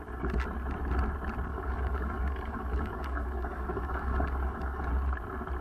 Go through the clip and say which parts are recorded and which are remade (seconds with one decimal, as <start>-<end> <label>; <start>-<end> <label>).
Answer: 0.0-1.5 recorded; 1.5-4.9 remade; 4.9-5.6 recorded